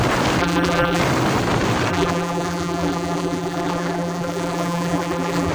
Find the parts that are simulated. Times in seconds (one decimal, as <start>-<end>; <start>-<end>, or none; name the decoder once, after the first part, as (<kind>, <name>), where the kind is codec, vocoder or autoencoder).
0.4-1.0 (vocoder, BigVGAN v2); 1.9-5.5